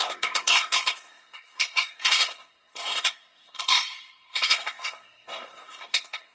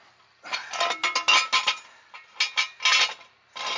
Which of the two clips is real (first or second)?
second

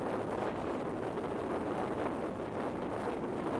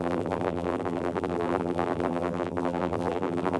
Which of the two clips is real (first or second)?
first